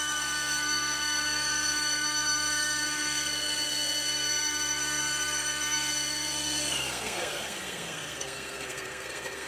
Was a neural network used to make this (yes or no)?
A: yes